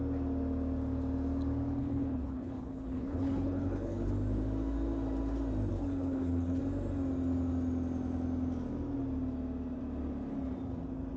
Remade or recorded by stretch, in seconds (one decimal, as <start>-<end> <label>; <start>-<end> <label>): 0.0-1.8 recorded; 1.8-4.1 remade; 4.1-5.7 recorded; 5.7-6.6 remade; 6.6-11.2 recorded